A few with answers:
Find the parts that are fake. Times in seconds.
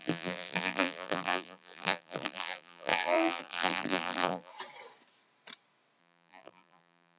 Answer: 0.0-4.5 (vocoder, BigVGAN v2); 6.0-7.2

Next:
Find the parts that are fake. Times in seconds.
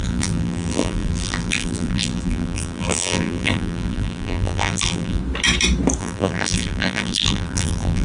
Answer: 0.0-5.2 (vocoder, BigVGAN v2); 6.0-8.0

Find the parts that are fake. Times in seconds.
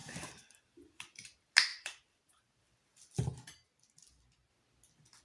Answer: 0.0-0.6 (vocoder, BigVGAN v2); 1.7-2.6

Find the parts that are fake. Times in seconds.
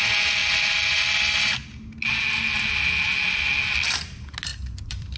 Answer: 4.5-5.2 (vocoder, BigVGAN v2)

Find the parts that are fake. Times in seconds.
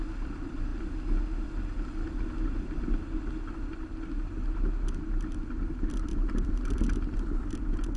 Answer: 6.1-7.4 (vocoder, BigVGAN v2)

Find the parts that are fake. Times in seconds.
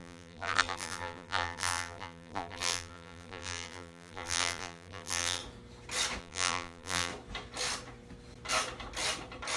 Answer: 0.0-5.4 (vocoder, BigVGAN v2); 6.2-7.1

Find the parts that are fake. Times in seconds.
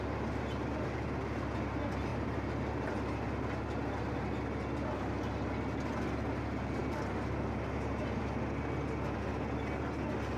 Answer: 2.1-2.9 (vocoder, BigVGAN v2)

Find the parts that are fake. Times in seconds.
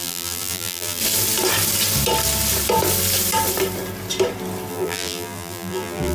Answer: 0.0-1.0 (vocoder, BigVGAN v2); 4.7-6.1